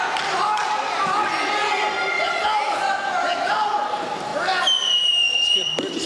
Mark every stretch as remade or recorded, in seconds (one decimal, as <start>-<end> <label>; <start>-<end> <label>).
0.0-4.3 remade; 4.3-5.3 recorded; 5.3-6.1 remade